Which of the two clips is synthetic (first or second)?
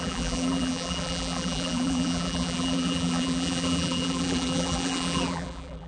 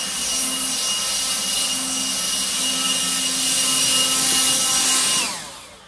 first